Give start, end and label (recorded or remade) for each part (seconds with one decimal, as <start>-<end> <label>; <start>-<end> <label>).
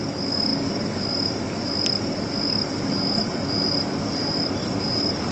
0.0-5.3 recorded